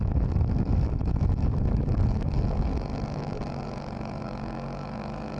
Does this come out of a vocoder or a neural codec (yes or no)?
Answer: yes